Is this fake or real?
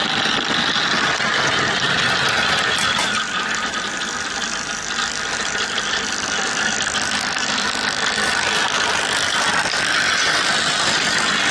real